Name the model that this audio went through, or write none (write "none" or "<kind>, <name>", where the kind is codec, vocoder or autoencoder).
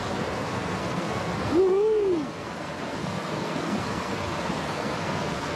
codec, SNAC